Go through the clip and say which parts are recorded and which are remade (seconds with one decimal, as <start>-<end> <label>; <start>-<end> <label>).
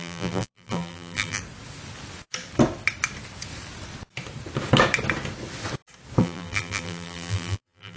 0.0-1.4 remade; 1.4-6.2 recorded; 6.2-8.0 remade